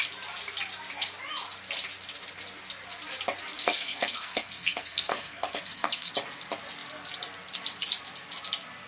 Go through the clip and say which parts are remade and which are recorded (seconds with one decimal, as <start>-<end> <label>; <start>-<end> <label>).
0.0-3.6 recorded; 3.6-6.1 remade; 6.1-8.9 recorded